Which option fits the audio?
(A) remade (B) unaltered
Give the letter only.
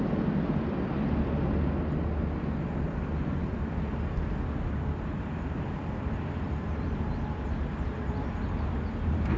B